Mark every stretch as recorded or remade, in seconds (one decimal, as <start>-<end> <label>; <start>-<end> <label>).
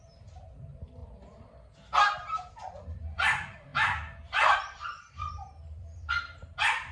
0.0-1.0 remade; 1.0-2.5 recorded; 2.5-6.9 remade